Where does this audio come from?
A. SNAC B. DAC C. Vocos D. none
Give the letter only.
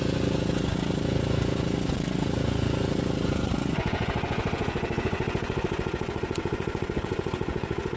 C